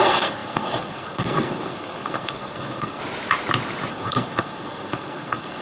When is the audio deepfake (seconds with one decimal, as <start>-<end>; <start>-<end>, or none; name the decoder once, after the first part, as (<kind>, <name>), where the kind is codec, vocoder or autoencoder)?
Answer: 0.0-3.0 (codec, SNAC); 3.9-5.6